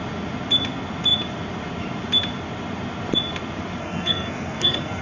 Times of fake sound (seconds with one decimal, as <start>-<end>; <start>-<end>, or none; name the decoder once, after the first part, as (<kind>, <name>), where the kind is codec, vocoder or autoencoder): 3.8-5.0 (codec, SNAC)